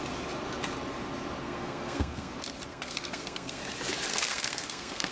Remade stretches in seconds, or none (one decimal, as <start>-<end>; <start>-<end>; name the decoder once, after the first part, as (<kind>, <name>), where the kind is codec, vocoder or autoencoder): 1.4-2.3 (codec, SNAC); 2.7-3.6; 4.1-5.1